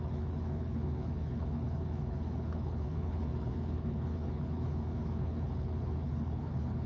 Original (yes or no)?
no